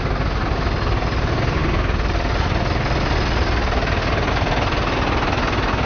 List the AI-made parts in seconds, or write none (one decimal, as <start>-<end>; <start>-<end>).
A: none

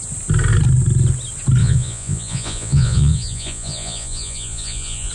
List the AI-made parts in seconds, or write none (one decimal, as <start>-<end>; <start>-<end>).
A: 1.6-5.1

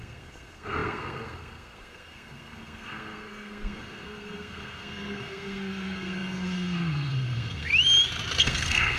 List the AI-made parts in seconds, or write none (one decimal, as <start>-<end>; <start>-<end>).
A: 0.0-7.7; 8.4-9.0

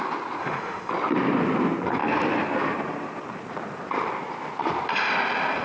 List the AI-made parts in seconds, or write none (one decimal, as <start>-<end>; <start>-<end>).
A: 0.4-0.9

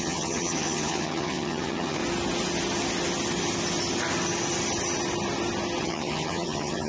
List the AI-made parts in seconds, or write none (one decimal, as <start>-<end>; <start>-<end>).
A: 0.0-2.0; 5.8-6.9

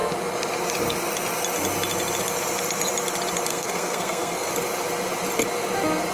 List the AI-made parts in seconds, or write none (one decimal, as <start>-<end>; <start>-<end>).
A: 3.5-4.5